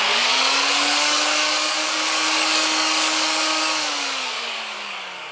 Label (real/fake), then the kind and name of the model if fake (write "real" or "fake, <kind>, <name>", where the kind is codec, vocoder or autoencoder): fake, codec, DAC